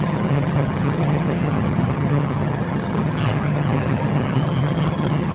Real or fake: fake